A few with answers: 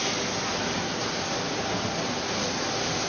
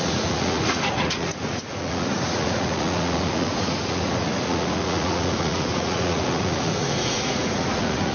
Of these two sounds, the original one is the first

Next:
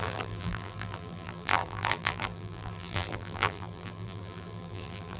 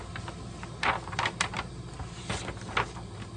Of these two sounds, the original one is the second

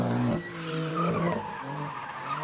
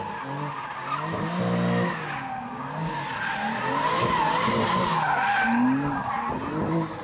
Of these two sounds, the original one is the second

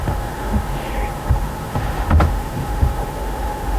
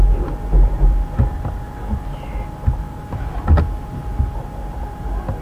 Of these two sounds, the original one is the second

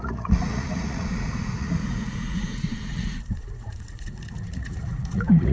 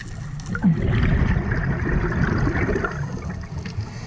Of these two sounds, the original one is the second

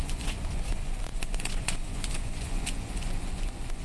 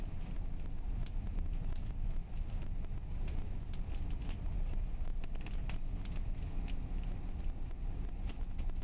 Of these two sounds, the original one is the second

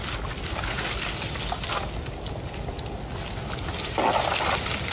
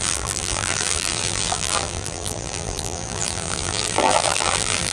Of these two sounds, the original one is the first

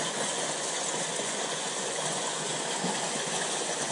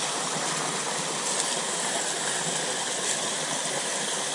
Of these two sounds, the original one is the second